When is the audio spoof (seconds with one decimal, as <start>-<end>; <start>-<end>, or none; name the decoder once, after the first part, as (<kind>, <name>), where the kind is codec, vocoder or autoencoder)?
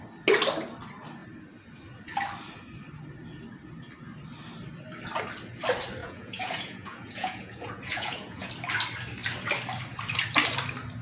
6.0-8.5 (vocoder, Vocos)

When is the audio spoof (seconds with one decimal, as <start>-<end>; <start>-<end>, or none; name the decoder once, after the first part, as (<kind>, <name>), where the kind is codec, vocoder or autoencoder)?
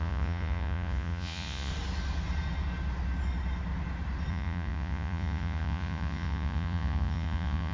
0.0-1.7 (vocoder, Vocos); 4.3-7.7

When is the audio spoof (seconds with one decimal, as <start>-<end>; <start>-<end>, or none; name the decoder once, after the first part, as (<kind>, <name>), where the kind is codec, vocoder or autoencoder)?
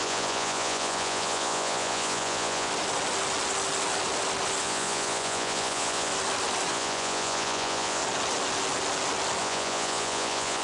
0.0-2.7 (vocoder, Vocos); 4.6-6.1; 6.7-8.0; 9.4-10.6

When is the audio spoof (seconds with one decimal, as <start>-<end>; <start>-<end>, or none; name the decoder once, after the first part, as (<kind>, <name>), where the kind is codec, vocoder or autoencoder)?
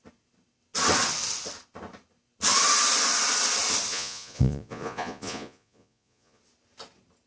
3.9-6.4 (vocoder, Vocos)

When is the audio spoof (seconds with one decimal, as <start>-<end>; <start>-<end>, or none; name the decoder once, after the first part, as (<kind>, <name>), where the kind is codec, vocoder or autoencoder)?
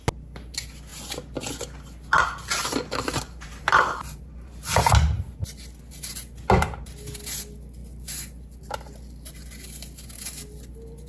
2.7-4.9 (vocoder, BigVGAN v2)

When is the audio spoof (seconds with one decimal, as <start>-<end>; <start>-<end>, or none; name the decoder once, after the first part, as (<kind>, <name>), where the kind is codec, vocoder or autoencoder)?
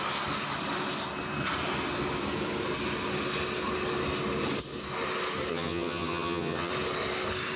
5.5-6.7 (vocoder, HiFi-GAN)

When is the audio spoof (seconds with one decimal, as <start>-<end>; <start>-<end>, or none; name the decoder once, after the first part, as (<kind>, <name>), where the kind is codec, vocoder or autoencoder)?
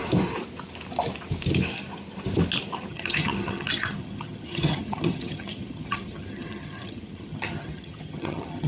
2.9-8.7 (vocoder, HiFi-GAN)